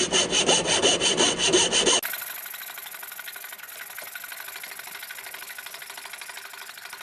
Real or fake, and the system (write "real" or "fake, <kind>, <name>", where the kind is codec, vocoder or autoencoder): real